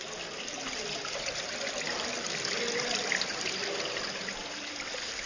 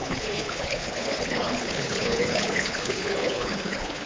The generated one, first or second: second